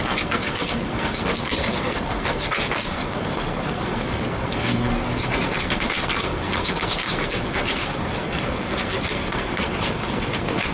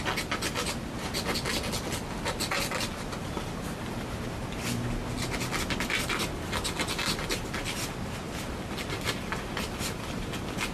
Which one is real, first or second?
second